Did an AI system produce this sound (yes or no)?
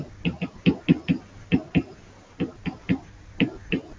no